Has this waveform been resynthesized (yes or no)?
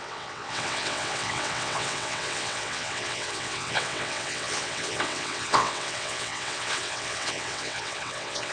yes